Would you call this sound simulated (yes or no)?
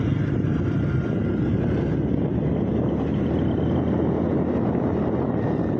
no